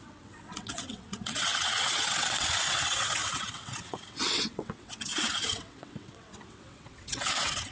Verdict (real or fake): fake